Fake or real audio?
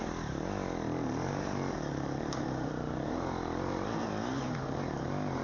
real